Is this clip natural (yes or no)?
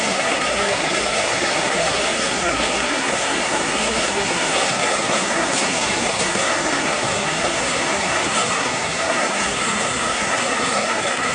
no